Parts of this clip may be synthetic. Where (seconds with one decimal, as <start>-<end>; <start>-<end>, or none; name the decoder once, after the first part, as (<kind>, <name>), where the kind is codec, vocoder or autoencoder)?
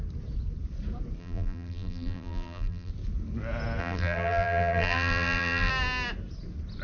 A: 1.2-2.9 (vocoder, BigVGAN v2); 3.8-5.7